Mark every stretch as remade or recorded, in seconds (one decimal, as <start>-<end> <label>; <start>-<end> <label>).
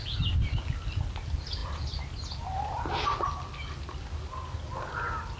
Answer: 0.0-5.4 recorded